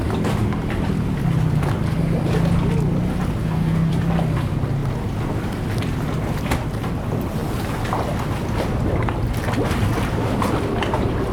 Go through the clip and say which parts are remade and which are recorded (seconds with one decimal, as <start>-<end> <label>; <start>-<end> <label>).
0.0-3.4 recorded; 3.4-3.9 remade; 3.9-11.3 recorded